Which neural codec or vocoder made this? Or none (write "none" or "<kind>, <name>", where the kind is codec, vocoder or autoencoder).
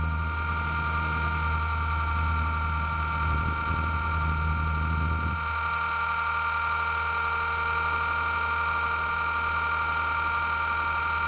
none